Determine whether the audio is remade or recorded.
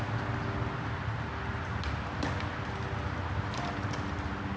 recorded